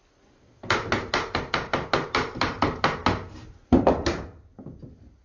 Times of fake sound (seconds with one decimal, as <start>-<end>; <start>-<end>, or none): none